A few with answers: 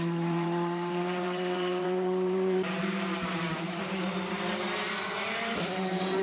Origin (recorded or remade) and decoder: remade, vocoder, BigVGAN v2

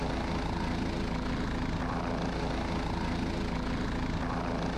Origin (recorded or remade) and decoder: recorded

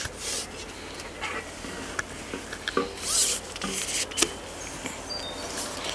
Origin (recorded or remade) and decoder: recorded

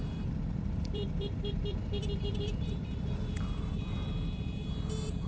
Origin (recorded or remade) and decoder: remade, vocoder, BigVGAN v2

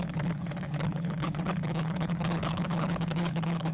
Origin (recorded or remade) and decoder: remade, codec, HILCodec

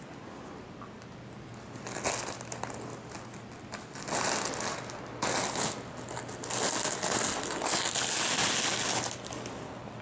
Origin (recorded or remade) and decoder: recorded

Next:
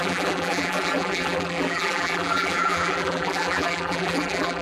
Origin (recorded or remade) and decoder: remade, vocoder, BigVGAN v2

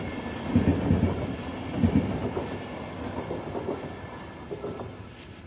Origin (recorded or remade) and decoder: recorded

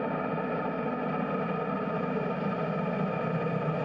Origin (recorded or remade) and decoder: recorded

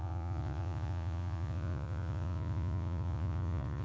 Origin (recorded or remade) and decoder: remade, vocoder, Vocos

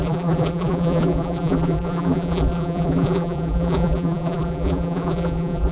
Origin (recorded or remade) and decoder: remade, vocoder, BigVGAN v2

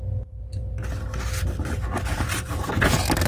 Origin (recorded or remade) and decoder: recorded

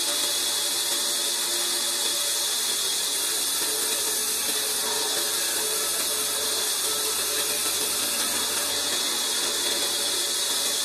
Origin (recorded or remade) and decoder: recorded